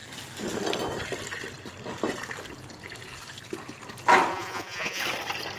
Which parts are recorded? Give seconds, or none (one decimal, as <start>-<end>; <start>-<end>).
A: 0.0-4.3; 5.0-5.6